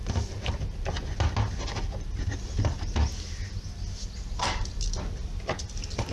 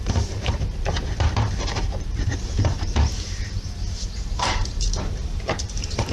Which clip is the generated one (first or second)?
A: second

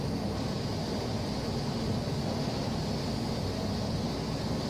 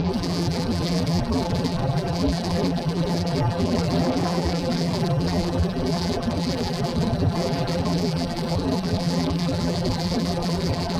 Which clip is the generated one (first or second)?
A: second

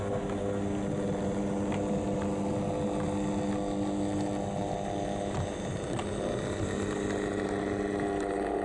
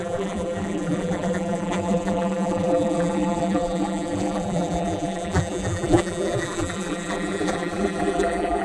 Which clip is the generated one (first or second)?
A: second